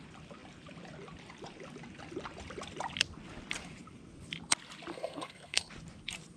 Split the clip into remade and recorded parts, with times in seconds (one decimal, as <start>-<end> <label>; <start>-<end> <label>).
0.0-4.9 recorded; 4.9-5.7 remade; 5.7-6.4 recorded